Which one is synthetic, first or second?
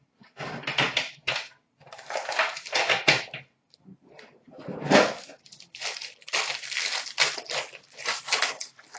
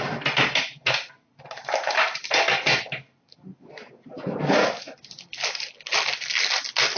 first